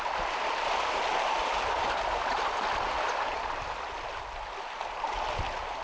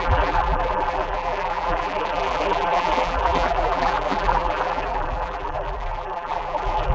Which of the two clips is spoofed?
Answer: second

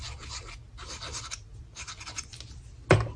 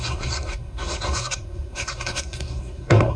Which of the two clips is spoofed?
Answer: second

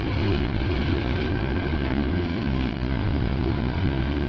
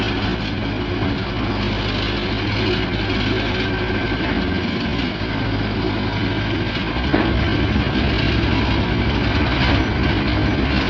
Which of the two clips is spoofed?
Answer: first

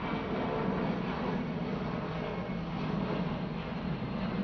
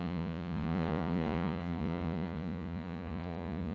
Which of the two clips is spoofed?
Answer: second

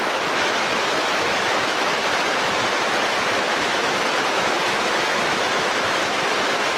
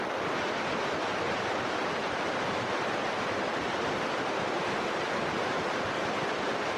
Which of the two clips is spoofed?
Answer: first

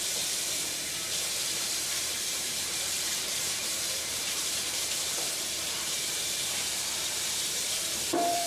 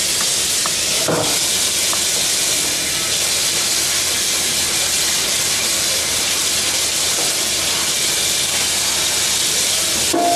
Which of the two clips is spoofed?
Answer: first